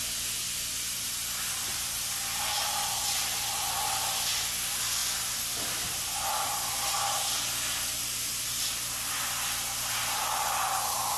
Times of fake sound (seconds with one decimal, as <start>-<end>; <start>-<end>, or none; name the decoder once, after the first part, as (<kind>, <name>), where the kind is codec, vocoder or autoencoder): none